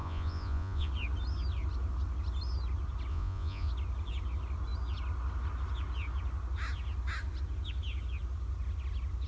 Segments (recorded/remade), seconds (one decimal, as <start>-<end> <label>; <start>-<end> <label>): 0.0-0.9 remade; 0.9-3.1 recorded; 3.1-3.7 remade; 3.7-9.3 recorded